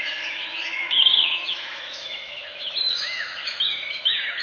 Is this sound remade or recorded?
remade